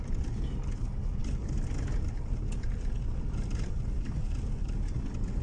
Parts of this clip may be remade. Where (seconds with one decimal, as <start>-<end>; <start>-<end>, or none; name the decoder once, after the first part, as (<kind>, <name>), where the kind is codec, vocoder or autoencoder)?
none